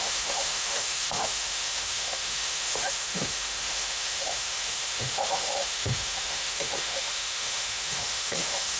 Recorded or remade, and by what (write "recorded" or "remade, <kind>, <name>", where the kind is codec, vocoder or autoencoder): remade, autoencoder, DAC-VAE